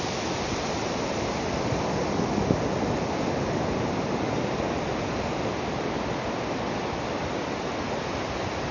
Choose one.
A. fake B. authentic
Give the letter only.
B